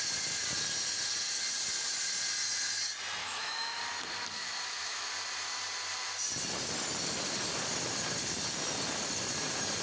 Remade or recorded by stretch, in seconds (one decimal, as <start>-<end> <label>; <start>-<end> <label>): 0.0-3.2 recorded; 3.2-3.8 remade; 3.8-4.4 recorded; 4.4-5.1 remade; 5.1-9.8 recorded